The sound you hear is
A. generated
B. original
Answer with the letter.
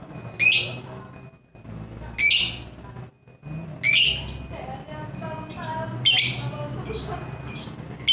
B